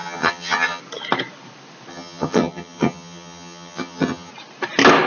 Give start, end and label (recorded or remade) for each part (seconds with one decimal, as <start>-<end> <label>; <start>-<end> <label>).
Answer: 0.0-0.8 remade; 0.8-1.9 recorded; 1.9-4.3 remade; 4.3-5.1 recorded